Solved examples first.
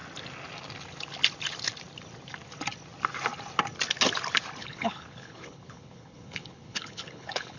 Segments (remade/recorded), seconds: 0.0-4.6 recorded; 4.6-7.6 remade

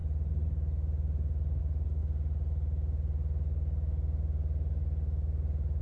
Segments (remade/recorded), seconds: 0.0-5.8 recorded

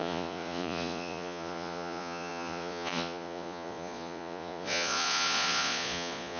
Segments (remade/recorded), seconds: 0.0-6.4 remade

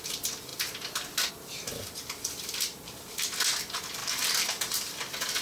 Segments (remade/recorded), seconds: 0.0-5.4 remade

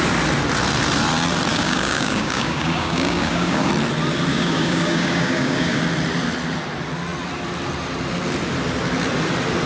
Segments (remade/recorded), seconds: 0.0-1.5 recorded; 1.5-3.7 remade; 3.7-4.3 recorded; 4.3-5.8 remade; 5.8-9.7 recorded

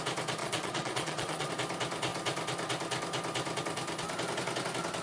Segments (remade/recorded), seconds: 0.0-0.4 recorded; 0.4-1.5 remade; 1.5-5.0 recorded

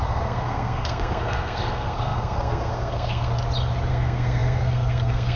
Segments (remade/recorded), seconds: 0.0-3.3 remade; 3.3-3.9 recorded; 3.9-5.4 remade